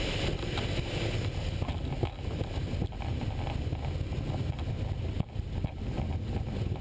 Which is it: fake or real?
real